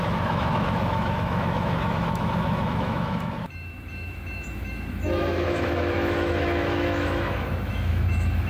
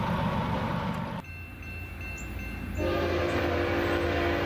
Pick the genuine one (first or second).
second